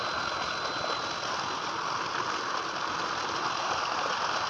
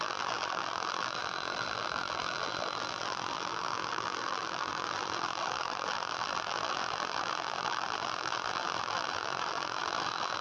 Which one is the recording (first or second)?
first